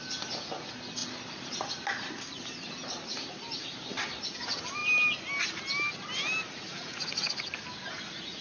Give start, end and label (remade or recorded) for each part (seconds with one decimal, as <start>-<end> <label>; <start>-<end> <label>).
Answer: 0.0-6.7 recorded; 6.7-7.3 remade; 7.3-8.4 recorded